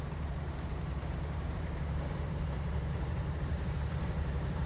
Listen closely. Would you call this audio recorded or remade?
remade